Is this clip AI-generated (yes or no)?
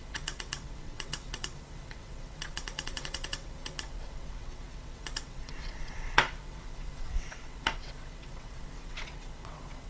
yes